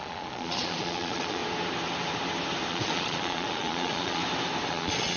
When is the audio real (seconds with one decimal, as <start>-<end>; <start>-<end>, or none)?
1.4-2.7; 4.2-4.7